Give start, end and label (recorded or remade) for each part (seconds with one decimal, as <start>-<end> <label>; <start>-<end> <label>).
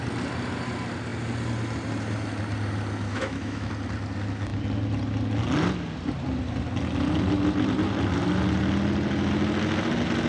0.0-3.1 recorded; 3.1-3.7 remade; 3.7-10.3 recorded